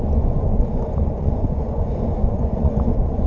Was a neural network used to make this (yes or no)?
yes